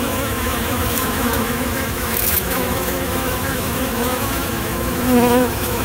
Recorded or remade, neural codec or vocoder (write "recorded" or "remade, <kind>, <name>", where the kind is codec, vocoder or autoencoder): remade, autoencoder, DAC-VAE